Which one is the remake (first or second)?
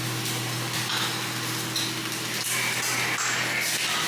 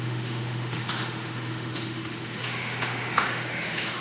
second